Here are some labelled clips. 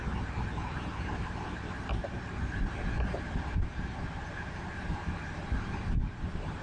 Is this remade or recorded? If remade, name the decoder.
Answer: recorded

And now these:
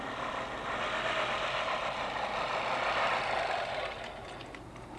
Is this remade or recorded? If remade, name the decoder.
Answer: recorded